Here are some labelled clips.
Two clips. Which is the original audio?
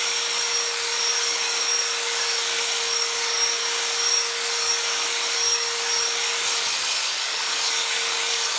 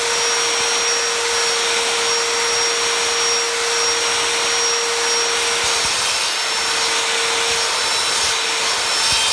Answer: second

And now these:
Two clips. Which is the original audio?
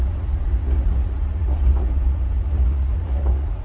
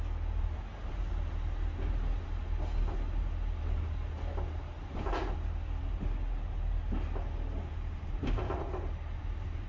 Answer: second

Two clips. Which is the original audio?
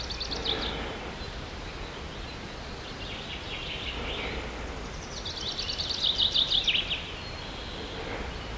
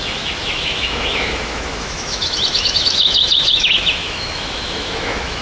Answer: first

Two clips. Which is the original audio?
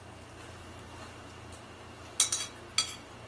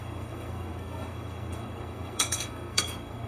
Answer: first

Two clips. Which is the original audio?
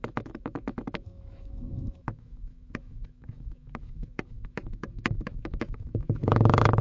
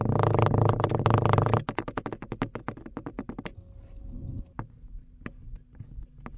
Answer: second